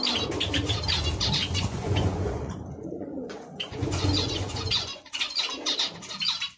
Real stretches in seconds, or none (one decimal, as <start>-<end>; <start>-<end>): 0.0-1.4; 5.4-6.6

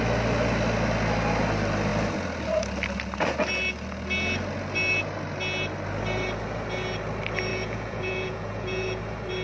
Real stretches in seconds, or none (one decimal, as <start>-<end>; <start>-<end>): 0.0-7.5; 9.0-9.4

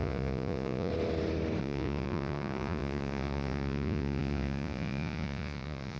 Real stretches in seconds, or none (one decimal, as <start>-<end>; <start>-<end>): 0.9-1.6

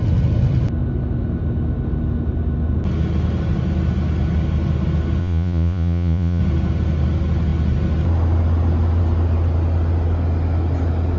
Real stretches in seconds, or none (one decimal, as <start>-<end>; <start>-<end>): 0.0-5.2; 6.4-11.2

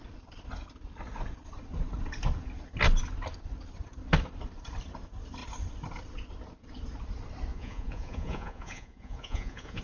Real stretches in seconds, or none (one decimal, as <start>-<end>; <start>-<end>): 0.0-7.5

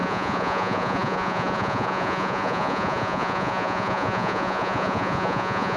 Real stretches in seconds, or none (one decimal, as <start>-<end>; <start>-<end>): none

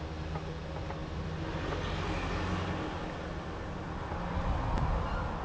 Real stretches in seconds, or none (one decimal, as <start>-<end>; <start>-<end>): 0.0-5.4

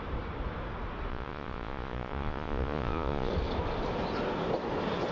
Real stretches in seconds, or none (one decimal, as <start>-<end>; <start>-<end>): 0.0-1.1; 3.3-5.1